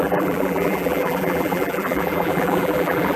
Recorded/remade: remade